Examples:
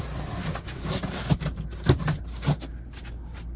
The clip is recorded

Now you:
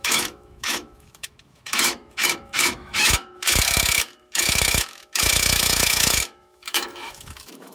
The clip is remade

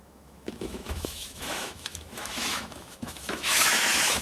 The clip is remade